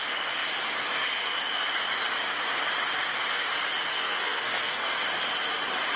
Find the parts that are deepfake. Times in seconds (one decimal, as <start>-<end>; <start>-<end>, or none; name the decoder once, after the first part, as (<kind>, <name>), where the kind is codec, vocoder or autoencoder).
3.9-5.0 (codec, SNAC)